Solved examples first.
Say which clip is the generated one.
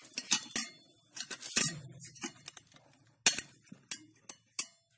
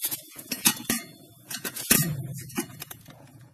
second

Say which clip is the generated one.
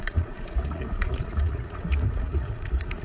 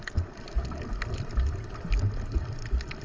first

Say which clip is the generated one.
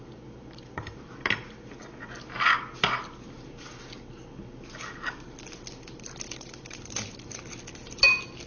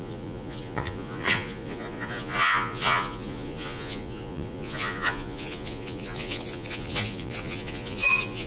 second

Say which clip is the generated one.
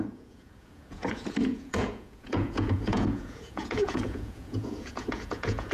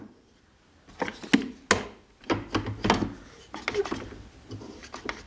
first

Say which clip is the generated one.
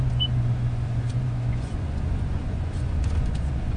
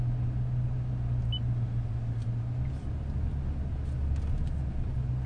first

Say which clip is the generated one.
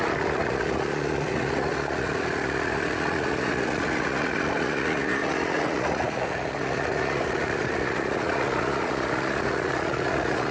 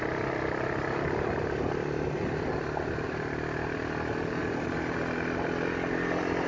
first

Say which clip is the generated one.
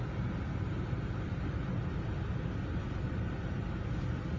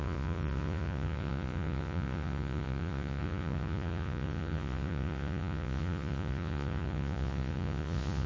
second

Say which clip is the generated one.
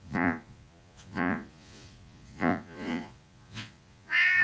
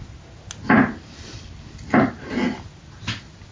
first